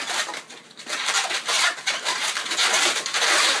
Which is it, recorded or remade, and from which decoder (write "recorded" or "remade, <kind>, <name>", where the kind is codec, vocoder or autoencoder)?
remade, vocoder, BigVGAN v2